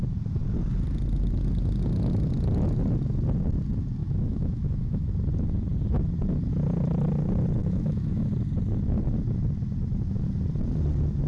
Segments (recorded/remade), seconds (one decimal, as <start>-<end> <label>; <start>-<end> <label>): 0.0-4.0 recorded; 4.0-5.1 remade; 5.1-7.6 recorded; 7.6-8.3 remade; 8.3-11.3 recorded